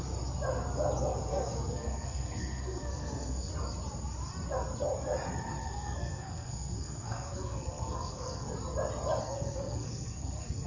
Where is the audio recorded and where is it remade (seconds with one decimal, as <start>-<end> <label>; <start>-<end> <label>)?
0.0-1.3 recorded; 1.3-3.5 remade; 3.5-5.6 recorded; 5.6-8.5 remade; 8.5-9.2 recorded; 9.2-10.7 remade